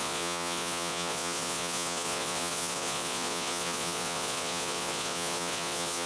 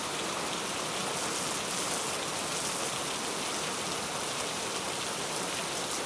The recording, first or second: second